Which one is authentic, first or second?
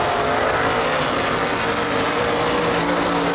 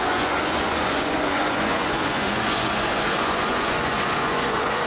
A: first